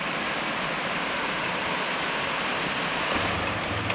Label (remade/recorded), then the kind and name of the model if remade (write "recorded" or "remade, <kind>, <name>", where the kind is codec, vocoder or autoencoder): recorded